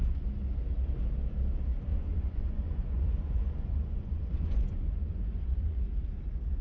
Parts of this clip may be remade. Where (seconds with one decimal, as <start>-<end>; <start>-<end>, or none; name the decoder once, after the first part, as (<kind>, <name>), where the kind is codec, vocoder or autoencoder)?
1.9-5.8 (vocoder, Vocos)